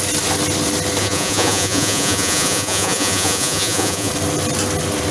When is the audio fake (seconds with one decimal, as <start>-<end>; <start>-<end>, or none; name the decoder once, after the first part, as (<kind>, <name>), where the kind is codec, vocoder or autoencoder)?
1.0-4.1 (vocoder, Vocos)